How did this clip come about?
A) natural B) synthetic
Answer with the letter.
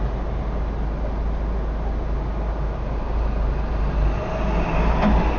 A